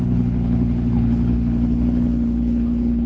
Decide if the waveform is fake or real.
fake